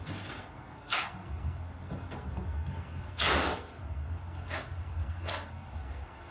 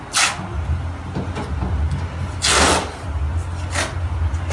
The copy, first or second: first